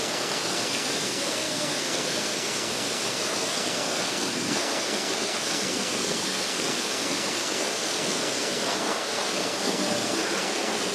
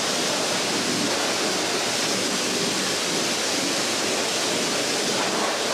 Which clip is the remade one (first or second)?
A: first